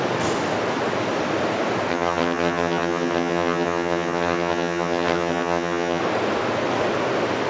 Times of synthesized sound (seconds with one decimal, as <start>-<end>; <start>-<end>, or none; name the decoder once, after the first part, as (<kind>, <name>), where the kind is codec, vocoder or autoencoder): 1.9-6.0 (vocoder, HiFi-GAN)